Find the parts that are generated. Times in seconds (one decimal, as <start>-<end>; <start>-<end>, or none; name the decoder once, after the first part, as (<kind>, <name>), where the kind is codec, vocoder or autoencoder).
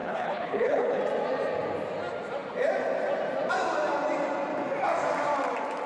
0.0-1.0 (codec, HILCodec)